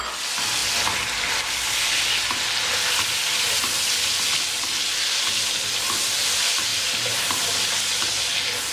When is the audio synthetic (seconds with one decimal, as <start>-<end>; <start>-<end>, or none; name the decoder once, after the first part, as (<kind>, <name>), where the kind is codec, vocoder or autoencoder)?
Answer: 6.7-7.3 (vocoder, BigVGAN v2)